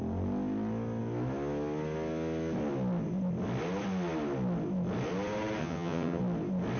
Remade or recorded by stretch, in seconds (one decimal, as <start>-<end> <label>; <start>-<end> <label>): 0.0-5.6 recorded; 5.6-6.2 remade; 6.2-6.8 recorded